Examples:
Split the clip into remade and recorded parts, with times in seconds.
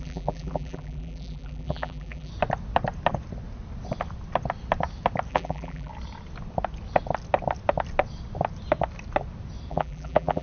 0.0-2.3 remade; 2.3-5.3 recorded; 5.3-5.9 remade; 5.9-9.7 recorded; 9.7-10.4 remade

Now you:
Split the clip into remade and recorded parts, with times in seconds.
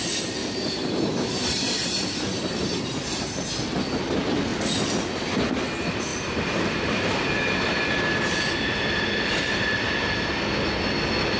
0.0-0.4 recorded; 0.4-3.5 remade; 3.5-6.1 recorded; 6.1-7.3 remade; 7.3-11.4 recorded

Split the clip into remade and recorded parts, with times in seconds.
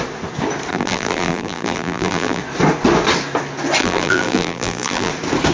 0.0-0.7 recorded; 0.7-2.4 remade; 2.4-3.8 recorded; 3.8-5.1 remade; 5.1-5.5 recorded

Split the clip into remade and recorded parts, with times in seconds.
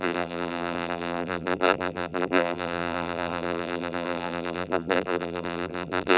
0.0-6.2 remade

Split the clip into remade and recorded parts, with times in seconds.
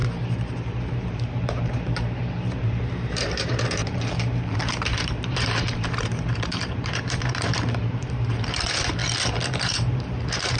0.0-9.0 remade; 9.0-9.6 recorded; 9.6-10.6 remade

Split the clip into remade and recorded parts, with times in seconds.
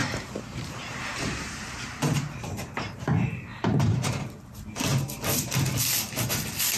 0.0-3.1 remade; 3.1-3.5 recorded; 3.5-4.2 remade; 4.2-6.8 recorded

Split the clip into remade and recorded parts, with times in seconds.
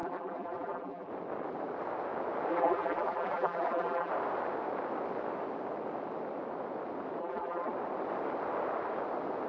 0.0-1.1 remade; 1.1-2.5 recorded; 2.5-4.1 remade; 4.1-7.2 recorded; 7.2-7.7 remade; 7.7-9.5 recorded